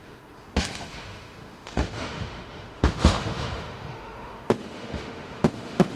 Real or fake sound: fake